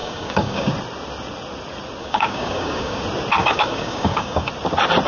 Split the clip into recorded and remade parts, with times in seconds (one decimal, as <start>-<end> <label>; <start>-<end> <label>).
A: 0.0-0.7 remade; 0.7-2.0 recorded; 2.0-3.0 remade; 3.0-3.4 recorded; 3.4-4.5 remade; 4.5-5.1 recorded